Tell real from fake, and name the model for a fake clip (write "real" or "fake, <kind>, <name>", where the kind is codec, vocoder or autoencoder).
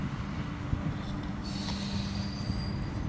real